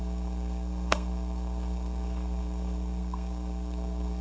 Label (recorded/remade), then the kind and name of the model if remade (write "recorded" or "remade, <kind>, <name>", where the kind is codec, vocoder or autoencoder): remade, codec, SNAC